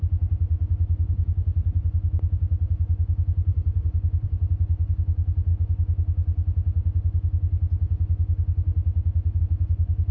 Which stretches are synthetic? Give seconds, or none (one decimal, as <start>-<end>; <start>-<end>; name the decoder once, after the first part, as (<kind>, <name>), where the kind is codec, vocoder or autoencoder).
3.5-4.5 (vocoder, BigVGAN v2)